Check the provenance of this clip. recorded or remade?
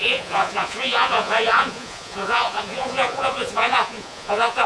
remade